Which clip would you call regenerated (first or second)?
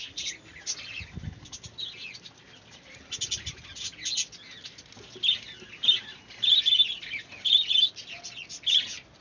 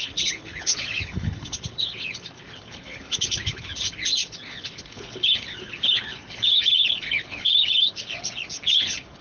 second